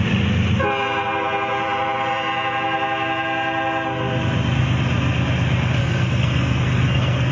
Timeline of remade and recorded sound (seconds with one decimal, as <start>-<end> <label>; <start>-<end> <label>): 0.0-5.8 recorded; 5.8-7.3 remade